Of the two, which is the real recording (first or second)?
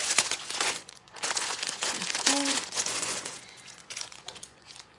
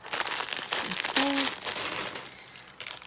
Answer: second